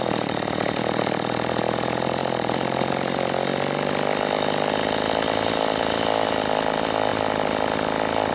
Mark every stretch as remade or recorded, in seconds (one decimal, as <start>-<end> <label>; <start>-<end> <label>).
0.0-8.3 recorded